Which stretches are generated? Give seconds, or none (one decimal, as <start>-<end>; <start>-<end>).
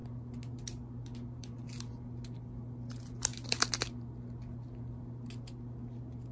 none